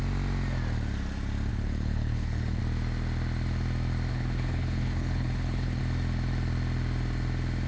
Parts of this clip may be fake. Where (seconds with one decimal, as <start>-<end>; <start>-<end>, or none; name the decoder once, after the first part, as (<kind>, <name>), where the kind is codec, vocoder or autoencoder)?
1.5-2.6 (codec, HILCodec); 4.1-5.8